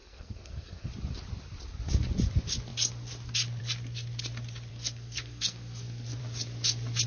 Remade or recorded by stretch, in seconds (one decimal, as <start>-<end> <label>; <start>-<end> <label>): 0.0-0.9 remade; 0.9-4.7 recorded; 4.7-6.2 remade; 6.2-7.1 recorded